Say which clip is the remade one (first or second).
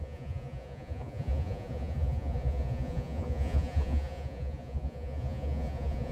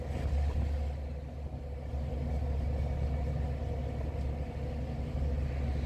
first